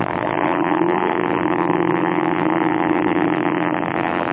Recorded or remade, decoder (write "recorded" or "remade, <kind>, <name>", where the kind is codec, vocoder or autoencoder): remade, vocoder, BigVGAN v2